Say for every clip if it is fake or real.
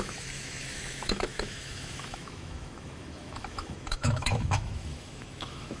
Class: fake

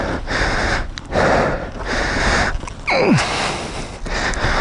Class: real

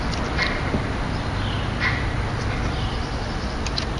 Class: real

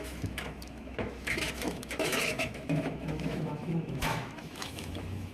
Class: fake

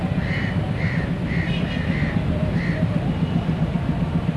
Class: real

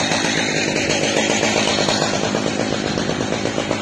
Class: real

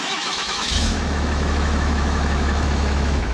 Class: fake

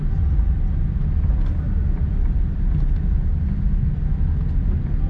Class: real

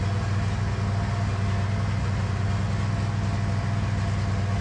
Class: real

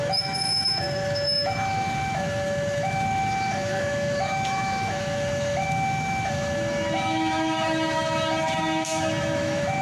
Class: fake